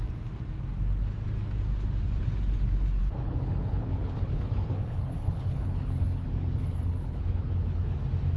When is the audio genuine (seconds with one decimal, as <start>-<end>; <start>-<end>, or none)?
0.0-3.0; 8.0-8.4